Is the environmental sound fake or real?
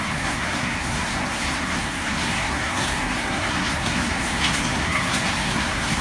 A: fake